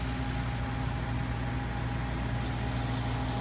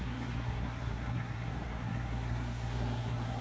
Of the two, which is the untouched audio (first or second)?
first